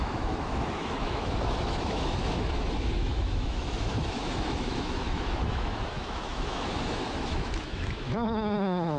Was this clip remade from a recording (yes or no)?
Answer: yes